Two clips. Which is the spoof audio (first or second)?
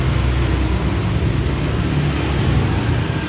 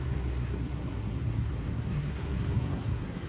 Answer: second